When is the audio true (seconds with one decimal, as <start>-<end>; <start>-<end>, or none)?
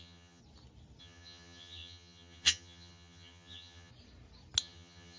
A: 0.4-1.0; 3.9-4.6